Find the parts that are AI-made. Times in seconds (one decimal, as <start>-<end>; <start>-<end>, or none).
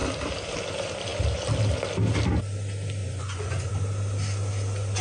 3.0-3.7